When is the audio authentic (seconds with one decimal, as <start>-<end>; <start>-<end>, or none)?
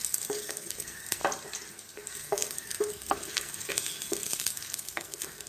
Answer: 1.2-1.7